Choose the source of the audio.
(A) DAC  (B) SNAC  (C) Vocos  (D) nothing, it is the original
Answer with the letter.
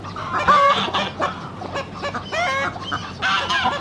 D